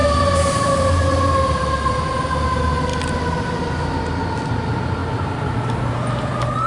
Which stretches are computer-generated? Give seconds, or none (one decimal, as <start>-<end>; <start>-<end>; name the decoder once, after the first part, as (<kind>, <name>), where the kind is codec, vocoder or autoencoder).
0.0-1.9 (vocoder, BigVGAN v2)

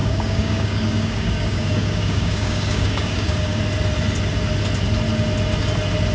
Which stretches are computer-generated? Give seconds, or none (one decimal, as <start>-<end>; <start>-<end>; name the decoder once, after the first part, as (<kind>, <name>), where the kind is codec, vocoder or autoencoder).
0.0-3.6 (codec, DAC)

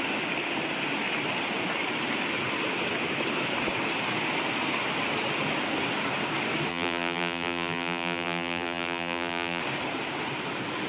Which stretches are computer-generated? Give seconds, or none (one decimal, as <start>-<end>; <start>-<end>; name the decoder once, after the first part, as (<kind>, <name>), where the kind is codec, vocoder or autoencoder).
6.7-9.6 (vocoder, BigVGAN v2)

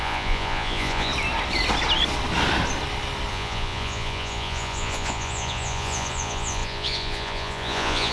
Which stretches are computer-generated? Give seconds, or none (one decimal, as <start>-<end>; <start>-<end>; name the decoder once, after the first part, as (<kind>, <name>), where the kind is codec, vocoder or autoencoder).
0.0-1.1 (vocoder, Vocos); 3.3-8.1

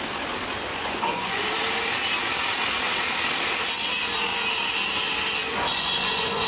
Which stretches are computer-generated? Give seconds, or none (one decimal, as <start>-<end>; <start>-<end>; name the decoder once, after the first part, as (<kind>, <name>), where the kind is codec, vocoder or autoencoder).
0.7-1.4 (vocoder, Vocos); 5.5-6.5

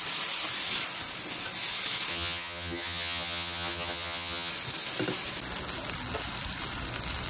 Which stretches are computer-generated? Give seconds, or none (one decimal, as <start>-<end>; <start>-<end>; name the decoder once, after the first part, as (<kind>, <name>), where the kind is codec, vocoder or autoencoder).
2.1-4.5 (vocoder, HiFi-GAN)

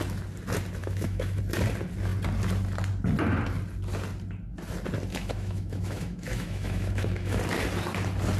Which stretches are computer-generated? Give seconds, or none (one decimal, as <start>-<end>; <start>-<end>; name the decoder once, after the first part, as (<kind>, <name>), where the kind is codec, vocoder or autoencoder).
0.8-1.4 (autoencoder, DAC-VAE); 5.1-7.4

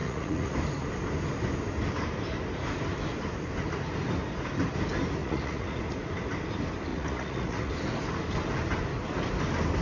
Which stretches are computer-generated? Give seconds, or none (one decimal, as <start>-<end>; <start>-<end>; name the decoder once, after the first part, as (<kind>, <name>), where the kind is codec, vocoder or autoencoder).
0.0-0.5 (vocoder, Vocos); 5.2-5.8; 6.9-7.7